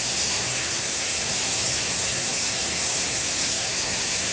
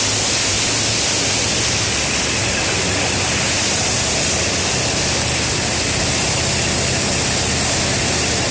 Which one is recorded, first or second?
second